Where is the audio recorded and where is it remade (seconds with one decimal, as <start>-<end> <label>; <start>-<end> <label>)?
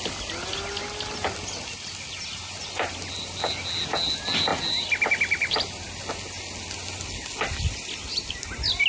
0.0-4.5 recorded; 4.5-6.1 remade; 6.1-8.9 recorded